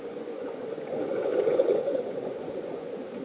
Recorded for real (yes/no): no